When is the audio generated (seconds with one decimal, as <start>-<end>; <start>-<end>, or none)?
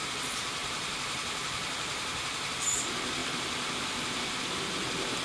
0.6-2.7